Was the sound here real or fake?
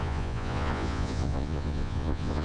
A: fake